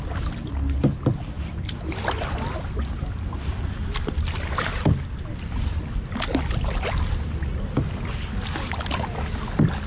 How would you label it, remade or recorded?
recorded